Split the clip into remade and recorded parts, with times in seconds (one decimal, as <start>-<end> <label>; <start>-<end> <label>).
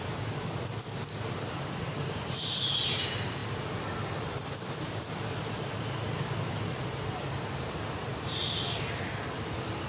0.0-9.9 recorded